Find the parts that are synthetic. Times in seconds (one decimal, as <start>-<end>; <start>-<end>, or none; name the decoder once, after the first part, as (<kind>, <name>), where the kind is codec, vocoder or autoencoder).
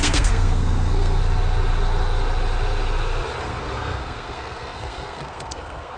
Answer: 0.0-1.2 (codec, SNAC); 3.4-6.0